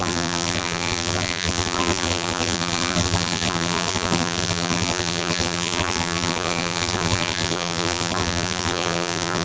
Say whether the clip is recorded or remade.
remade